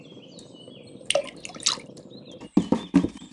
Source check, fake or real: real